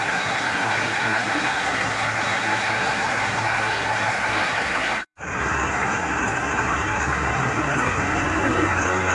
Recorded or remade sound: remade